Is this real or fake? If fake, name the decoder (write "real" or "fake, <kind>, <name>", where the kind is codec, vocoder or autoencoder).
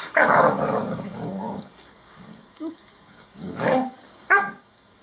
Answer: fake, codec, DAC